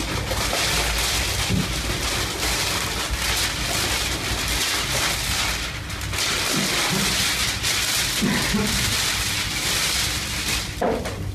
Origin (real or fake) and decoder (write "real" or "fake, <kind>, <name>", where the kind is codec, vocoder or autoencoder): real